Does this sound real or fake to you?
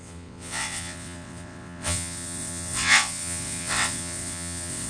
fake